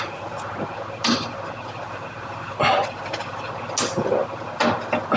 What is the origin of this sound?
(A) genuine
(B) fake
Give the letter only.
A